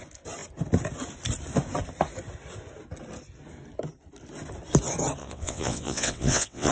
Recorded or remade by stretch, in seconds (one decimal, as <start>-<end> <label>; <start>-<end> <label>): 0.0-5.2 recorded; 5.2-6.7 remade

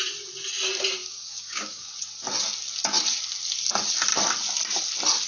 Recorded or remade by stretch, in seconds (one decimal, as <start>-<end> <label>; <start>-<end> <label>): 0.0-1.0 recorded; 1.0-1.9 remade; 1.9-5.3 recorded

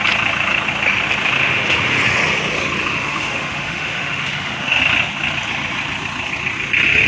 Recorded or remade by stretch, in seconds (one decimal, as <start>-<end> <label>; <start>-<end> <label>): 0.0-1.4 recorded; 1.4-1.9 remade; 1.9-2.9 recorded; 2.9-4.8 remade; 4.8-7.1 recorded

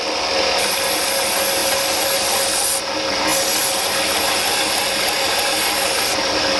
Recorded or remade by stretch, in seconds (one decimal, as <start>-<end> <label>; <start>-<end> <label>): 0.0-6.6 recorded

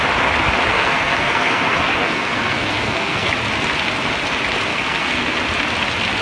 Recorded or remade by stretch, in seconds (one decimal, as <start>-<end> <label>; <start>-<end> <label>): 0.0-0.7 recorded; 0.7-3.3 remade; 3.3-4.7 recorded; 4.7-5.4 remade; 5.4-6.2 recorded

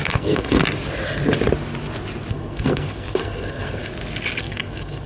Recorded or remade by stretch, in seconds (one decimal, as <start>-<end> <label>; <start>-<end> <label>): 0.0-0.6 remade; 0.6-2.3 recorded; 2.3-3.8 remade; 3.8-4.4 recorded; 4.4-5.1 remade

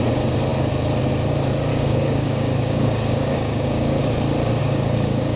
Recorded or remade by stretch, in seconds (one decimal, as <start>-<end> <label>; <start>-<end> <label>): 0.0-1.7 recorded; 1.7-4.0 remade; 4.0-4.6 recorded; 4.6-5.4 remade